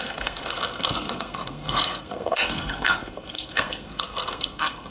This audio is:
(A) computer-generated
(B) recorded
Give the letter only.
A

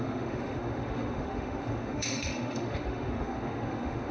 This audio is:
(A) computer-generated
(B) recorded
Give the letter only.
A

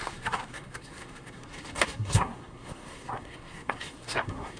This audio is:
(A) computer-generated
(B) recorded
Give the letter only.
A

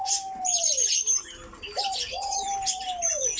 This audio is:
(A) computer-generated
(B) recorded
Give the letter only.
B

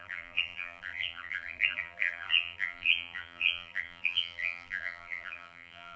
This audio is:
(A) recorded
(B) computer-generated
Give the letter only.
B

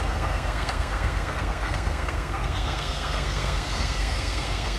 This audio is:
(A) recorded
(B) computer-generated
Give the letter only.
B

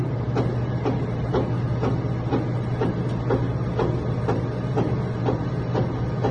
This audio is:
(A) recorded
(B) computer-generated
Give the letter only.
A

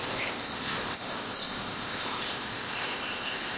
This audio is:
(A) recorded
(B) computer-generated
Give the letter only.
B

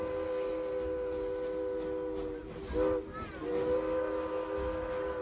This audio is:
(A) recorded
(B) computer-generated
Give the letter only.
A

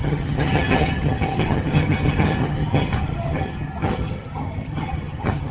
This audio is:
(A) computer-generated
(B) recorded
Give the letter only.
A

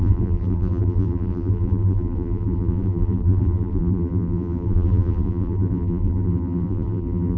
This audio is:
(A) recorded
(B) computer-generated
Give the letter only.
B